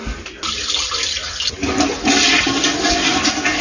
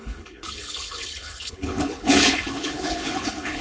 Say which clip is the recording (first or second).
first